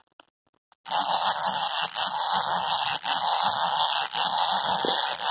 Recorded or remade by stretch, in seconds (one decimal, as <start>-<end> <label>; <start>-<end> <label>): 0.0-5.3 recorded